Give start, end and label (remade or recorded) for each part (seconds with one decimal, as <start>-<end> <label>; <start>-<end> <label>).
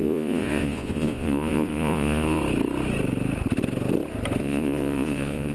0.0-2.4 remade; 2.4-4.4 recorded; 4.4-5.5 remade